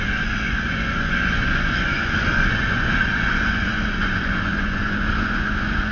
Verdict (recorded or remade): remade